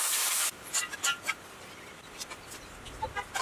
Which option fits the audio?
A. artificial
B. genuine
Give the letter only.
A